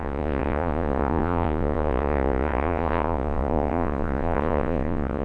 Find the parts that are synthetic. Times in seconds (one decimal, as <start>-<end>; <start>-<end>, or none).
0.0-5.2